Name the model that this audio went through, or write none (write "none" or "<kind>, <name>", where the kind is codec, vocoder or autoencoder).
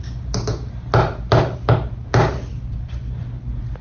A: none